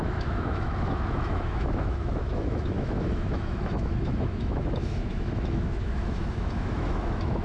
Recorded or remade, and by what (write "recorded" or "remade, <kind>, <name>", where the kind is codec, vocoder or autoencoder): remade, autoencoder, DAC-VAE